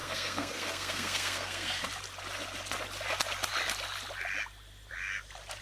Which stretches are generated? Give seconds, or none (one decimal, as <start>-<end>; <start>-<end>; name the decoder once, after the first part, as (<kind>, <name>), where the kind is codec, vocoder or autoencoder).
0.0-1.8 (codec, SNAC)